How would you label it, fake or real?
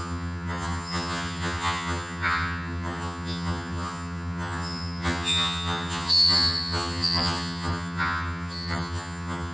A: fake